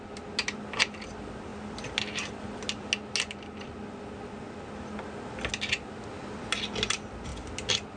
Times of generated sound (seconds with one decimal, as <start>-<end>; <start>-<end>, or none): none